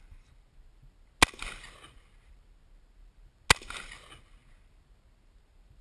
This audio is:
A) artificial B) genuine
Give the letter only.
B